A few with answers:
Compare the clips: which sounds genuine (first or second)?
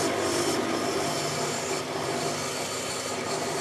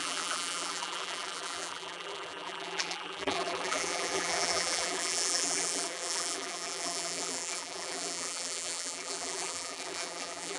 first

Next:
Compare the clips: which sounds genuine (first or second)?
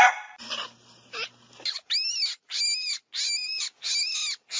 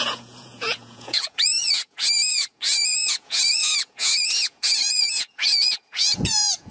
first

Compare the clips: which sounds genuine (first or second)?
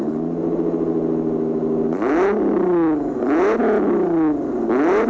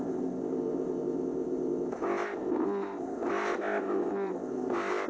first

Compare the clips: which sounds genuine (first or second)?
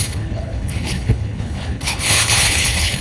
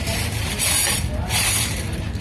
second